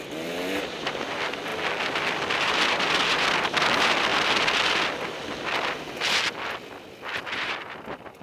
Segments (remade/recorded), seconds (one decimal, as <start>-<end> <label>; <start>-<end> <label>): 0.0-1.5 remade; 1.5-2.0 recorded; 2.0-4.1 remade; 4.1-7.2 recorded; 7.2-8.2 remade